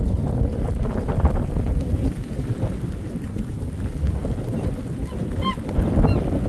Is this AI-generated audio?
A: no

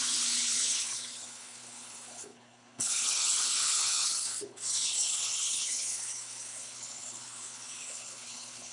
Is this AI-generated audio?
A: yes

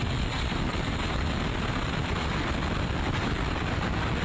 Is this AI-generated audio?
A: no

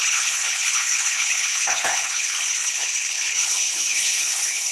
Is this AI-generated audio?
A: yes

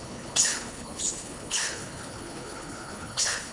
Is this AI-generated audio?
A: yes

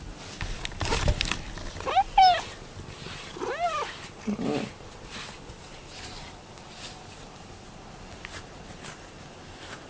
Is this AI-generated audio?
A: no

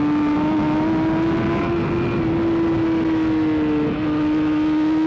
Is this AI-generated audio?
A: no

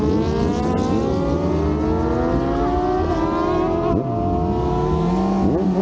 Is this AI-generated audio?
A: no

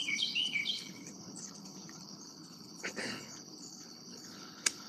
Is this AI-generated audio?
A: yes